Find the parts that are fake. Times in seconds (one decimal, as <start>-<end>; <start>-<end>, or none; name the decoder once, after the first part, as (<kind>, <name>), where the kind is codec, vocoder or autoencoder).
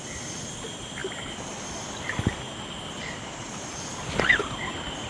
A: none